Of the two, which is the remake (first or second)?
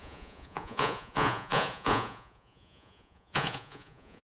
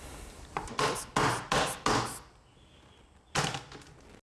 first